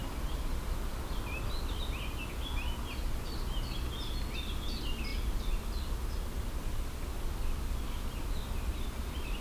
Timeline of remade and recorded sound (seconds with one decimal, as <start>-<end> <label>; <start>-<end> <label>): 0.0-9.4 recorded